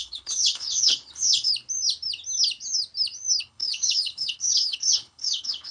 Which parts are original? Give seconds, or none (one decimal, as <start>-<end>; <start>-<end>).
1.5-3.4